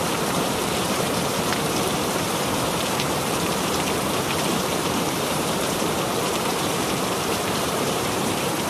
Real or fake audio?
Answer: fake